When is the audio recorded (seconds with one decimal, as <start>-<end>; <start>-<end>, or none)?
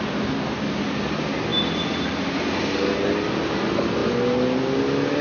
0.0-5.2